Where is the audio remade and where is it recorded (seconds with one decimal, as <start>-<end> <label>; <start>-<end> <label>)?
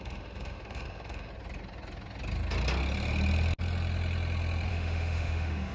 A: 0.0-1.3 remade; 1.3-4.7 recorded; 4.7-5.7 remade